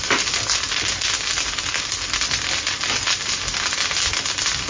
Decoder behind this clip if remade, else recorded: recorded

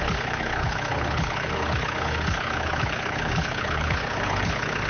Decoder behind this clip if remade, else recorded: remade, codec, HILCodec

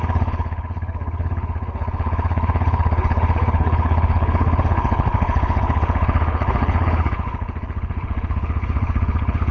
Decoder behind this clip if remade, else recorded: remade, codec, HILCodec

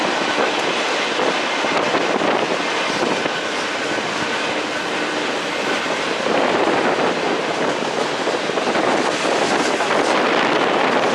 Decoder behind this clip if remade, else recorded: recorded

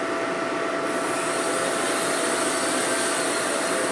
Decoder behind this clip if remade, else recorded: recorded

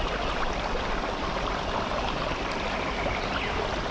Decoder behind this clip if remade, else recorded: recorded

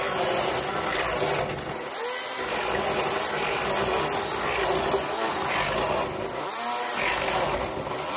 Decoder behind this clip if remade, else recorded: recorded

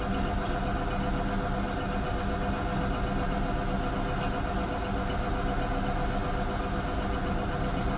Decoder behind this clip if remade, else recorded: recorded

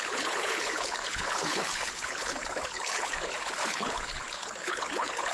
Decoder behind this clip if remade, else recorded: remade, codec, HILCodec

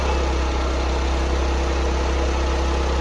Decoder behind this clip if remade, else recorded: recorded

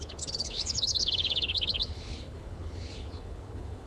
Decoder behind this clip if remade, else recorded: remade, codec, HILCodec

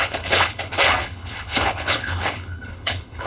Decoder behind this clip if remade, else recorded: remade, codec, HILCodec